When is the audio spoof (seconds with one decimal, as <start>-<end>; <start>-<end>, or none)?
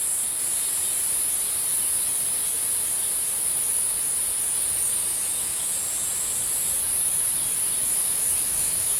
5.1-5.7; 7.8-9.0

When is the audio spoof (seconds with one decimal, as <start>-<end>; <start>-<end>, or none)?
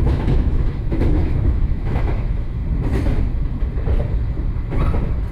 0.0-2.6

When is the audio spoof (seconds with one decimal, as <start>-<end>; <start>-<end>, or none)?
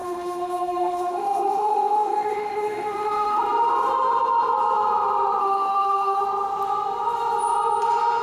0.0-3.4; 5.4-6.2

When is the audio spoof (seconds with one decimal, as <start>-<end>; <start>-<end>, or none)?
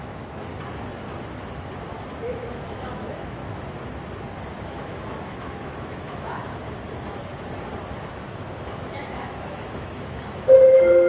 0.0-0.5; 2.2-3.4; 4.6-6.4; 8.1-11.1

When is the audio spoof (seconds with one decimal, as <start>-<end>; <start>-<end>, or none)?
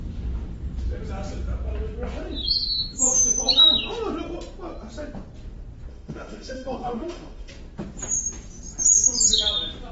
5.9-7.5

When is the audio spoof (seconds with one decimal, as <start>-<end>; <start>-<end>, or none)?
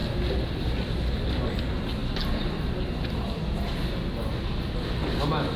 none